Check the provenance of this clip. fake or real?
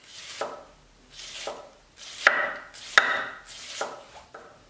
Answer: real